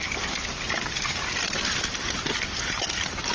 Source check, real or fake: real